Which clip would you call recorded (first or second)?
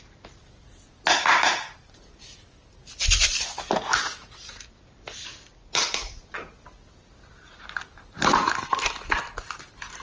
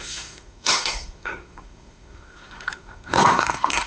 first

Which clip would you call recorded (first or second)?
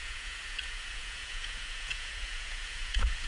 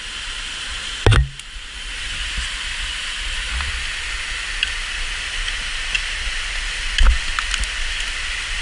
second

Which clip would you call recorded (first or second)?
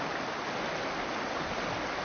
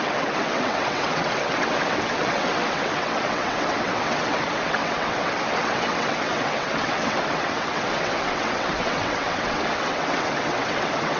first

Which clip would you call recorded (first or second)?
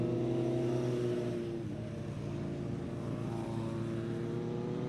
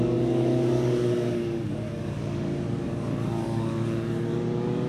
first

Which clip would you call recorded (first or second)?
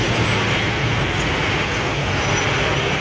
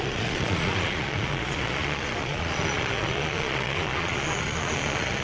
first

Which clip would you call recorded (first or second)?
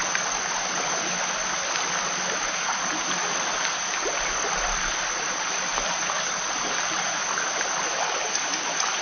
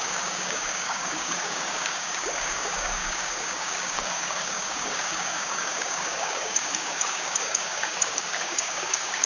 first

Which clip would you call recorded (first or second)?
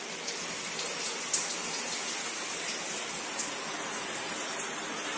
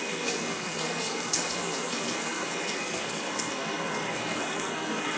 first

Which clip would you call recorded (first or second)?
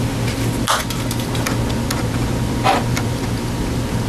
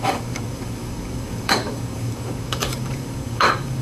first